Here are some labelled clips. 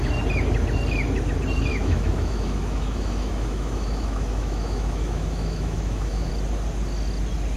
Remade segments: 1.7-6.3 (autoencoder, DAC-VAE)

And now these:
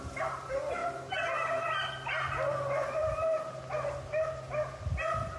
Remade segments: none

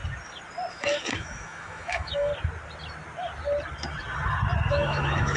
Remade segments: 0.7-2.3 (autoencoder, DAC-VAE); 4.7-5.4

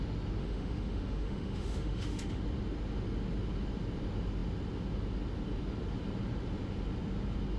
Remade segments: 0.4-2.4 (autoencoder, DAC-VAE)